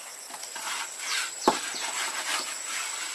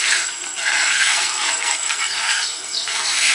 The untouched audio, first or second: first